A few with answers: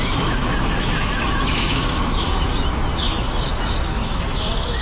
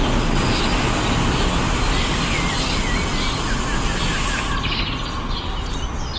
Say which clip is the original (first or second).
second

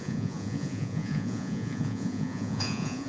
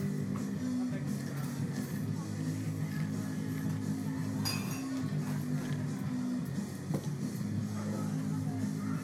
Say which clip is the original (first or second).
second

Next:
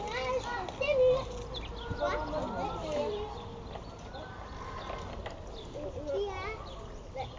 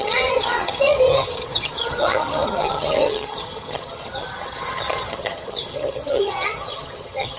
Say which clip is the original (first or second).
first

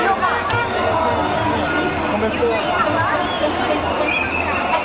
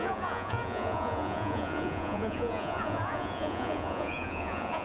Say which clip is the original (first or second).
first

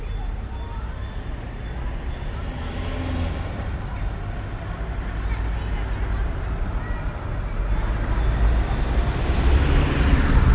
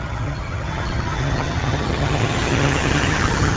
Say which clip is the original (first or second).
first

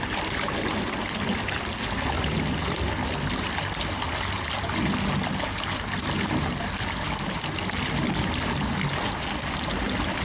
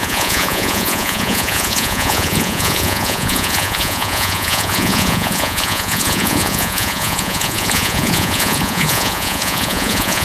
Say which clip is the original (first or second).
first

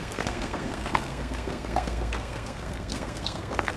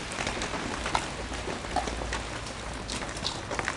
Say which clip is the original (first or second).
second